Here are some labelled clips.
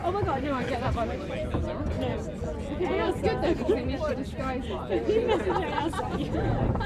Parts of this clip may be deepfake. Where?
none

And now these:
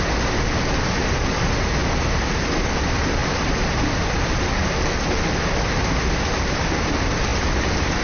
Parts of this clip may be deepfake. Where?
none

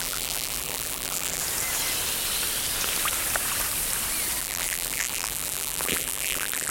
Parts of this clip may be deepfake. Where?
0.0-1.4 (vocoder, BigVGAN v2); 4.4-6.7

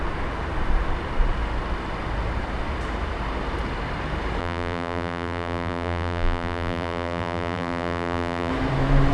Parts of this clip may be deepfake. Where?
4.4-8.5 (vocoder, BigVGAN v2)